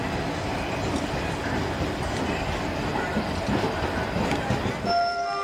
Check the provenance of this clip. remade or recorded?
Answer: recorded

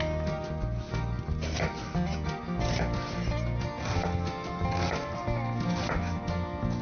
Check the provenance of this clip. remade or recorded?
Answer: recorded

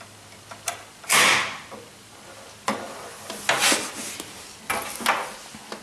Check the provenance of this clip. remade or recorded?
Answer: recorded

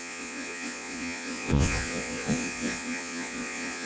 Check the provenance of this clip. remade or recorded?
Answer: remade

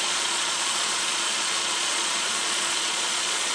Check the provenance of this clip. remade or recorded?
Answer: remade